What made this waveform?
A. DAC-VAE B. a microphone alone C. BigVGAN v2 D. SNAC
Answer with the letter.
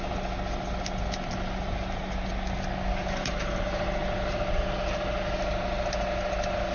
B